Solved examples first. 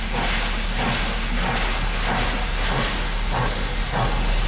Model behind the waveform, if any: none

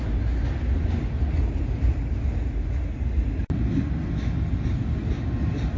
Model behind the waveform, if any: none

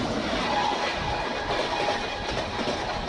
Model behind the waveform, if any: none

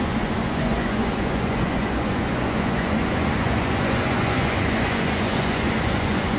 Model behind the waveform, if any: vocoder, Vocos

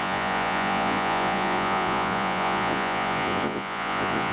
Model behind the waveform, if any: vocoder, Vocos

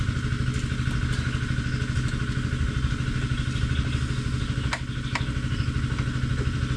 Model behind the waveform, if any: none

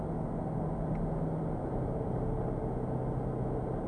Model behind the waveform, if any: none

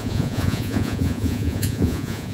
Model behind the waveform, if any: vocoder, Vocos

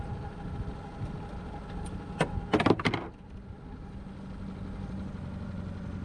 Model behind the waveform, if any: none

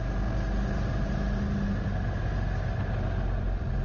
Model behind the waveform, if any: none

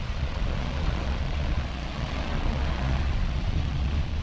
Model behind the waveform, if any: vocoder, Vocos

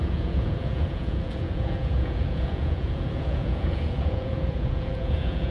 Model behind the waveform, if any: vocoder, Vocos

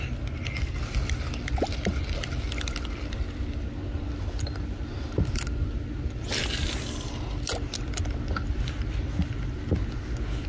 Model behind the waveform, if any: none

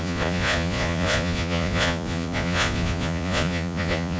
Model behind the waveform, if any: vocoder, Vocos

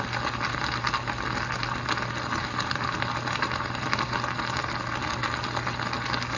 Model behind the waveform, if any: none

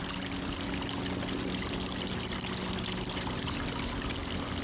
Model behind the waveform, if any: none